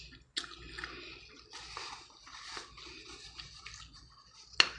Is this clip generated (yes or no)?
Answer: no